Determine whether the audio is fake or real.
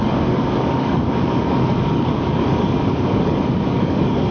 fake